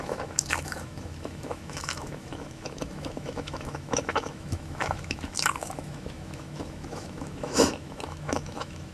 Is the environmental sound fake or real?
fake